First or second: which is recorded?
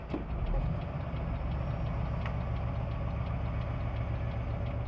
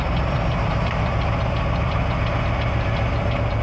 first